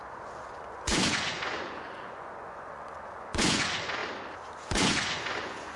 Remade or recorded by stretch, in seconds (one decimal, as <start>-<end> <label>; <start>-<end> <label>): 0.0-4.0 remade; 4.0-4.6 recorded; 4.6-5.8 remade